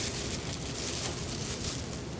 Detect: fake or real real